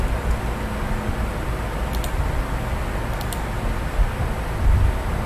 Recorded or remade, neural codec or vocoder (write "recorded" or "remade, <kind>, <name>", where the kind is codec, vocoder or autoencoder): recorded